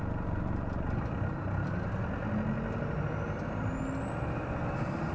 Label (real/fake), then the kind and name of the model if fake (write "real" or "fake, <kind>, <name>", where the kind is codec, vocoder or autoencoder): real